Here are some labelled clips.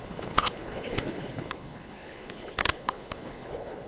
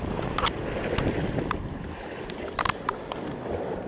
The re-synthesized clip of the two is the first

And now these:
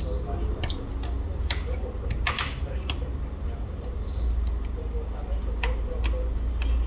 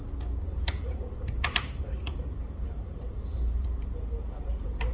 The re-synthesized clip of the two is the second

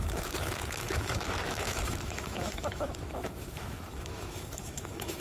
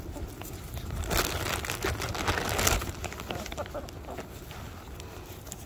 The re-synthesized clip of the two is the first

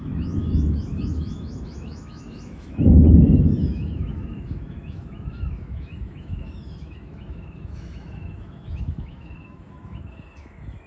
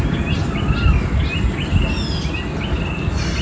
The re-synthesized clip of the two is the first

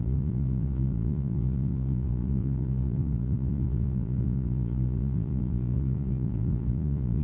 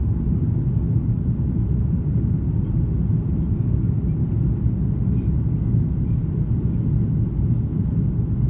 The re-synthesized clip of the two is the first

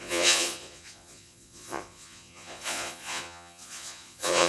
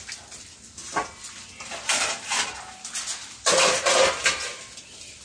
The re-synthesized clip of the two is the first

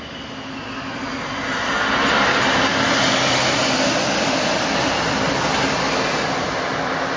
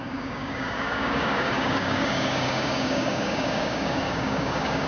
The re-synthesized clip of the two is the second